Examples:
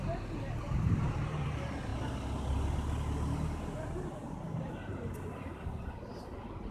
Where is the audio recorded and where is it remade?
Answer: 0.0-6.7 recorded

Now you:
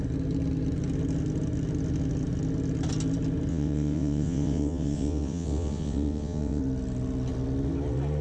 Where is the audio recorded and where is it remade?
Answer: 0.0-3.5 recorded; 3.5-6.6 remade; 6.6-8.2 recorded

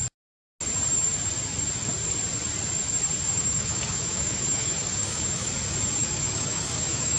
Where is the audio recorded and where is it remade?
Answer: 0.0-3.3 recorded; 3.3-5.5 remade; 5.5-6.0 recorded; 6.0-7.2 remade